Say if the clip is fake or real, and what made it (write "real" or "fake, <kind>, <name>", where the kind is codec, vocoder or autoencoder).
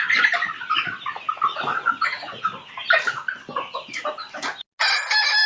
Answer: real